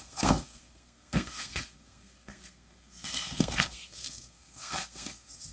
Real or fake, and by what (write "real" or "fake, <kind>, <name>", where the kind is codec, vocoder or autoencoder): fake, codec, SNAC